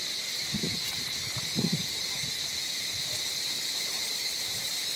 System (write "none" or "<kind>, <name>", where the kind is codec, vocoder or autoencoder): none